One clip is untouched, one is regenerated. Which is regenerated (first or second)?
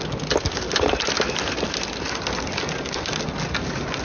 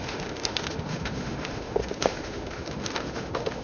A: second